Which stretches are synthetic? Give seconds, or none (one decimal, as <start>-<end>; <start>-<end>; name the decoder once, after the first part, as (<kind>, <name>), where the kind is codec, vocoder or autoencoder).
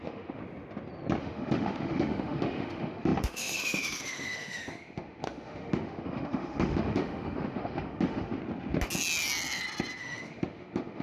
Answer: 0.0-0.4 (autoencoder, DAC-VAE); 1.2-8.4; 10.0-11.0